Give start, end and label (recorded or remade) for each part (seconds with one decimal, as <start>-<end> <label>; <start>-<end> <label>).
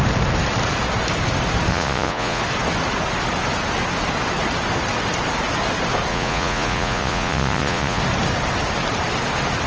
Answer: 0.0-1.7 recorded; 1.7-2.4 remade; 2.4-6.1 recorded; 6.1-8.0 remade; 8.0-9.7 recorded